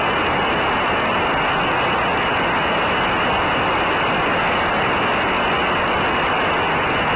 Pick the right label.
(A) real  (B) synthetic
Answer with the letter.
A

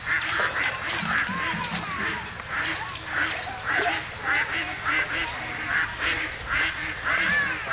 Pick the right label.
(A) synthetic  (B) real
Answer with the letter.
B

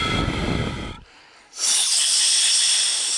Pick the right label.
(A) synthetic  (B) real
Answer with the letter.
B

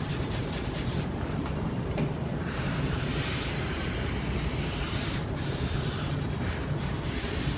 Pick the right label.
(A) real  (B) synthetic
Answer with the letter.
B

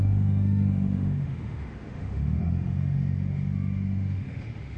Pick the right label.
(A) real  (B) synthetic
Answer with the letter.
B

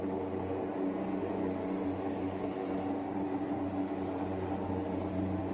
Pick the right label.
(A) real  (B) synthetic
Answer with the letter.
A